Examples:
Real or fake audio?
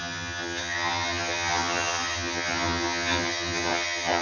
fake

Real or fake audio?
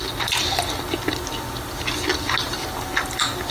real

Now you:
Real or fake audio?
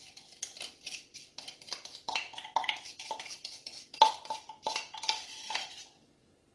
real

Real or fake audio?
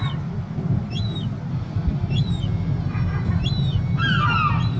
real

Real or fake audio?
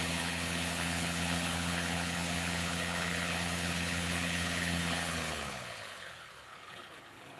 fake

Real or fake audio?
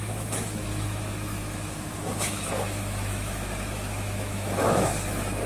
fake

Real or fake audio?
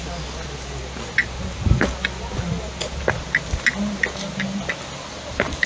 real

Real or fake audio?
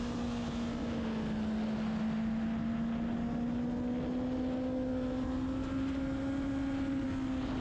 real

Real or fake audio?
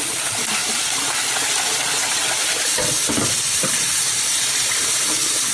fake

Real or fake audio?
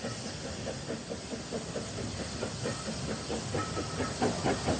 real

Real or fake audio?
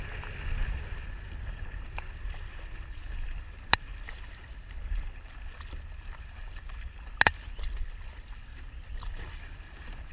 real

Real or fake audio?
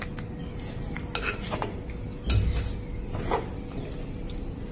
real